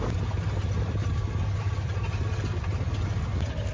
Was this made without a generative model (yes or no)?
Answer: yes